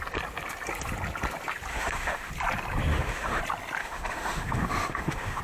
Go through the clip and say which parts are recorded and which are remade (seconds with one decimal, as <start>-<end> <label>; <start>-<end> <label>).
0.0-1.7 recorded; 1.7-2.3 remade; 2.3-2.9 recorded; 2.9-3.4 remade; 3.4-3.8 recorded; 3.8-5.4 remade

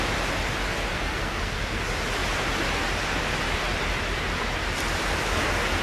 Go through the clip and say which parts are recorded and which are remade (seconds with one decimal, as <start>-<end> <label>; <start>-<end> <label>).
0.0-0.9 recorded; 0.9-1.8 remade; 1.8-5.8 recorded

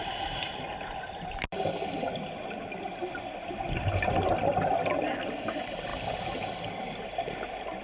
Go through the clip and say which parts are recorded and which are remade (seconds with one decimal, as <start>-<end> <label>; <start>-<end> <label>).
0.0-7.8 recorded

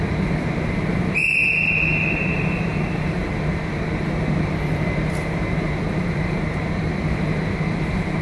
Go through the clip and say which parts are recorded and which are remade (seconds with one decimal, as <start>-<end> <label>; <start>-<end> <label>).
0.0-1.4 remade; 1.4-2.3 recorded; 2.3-8.2 remade

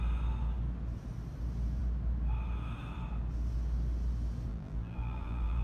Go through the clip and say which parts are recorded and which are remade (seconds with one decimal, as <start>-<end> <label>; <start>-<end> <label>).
0.0-4.5 recorded; 4.5-5.6 remade

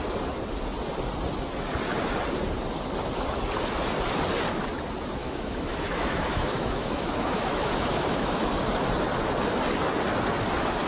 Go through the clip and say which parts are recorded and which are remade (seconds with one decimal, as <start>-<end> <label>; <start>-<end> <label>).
0.0-5.2 recorded; 5.2-8.4 remade; 8.4-10.9 recorded